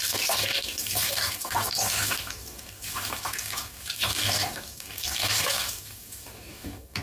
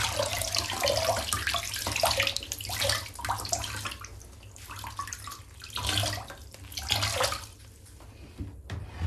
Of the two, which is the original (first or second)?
second